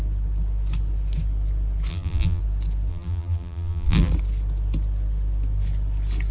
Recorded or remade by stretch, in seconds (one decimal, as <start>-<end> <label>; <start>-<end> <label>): 0.0-1.9 recorded; 1.9-2.4 remade; 2.4-2.9 recorded; 2.9-4.1 remade; 4.1-6.3 recorded